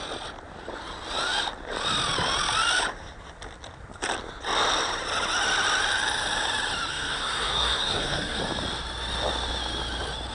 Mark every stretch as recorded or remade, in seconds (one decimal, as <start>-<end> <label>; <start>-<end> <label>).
0.0-6.9 recorded; 6.9-8.4 remade; 8.4-10.3 recorded